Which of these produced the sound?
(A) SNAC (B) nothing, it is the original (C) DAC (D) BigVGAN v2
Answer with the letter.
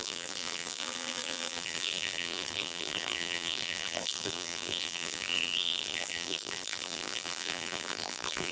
D